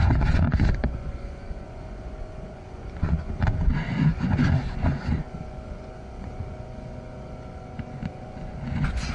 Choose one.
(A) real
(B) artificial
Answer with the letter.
B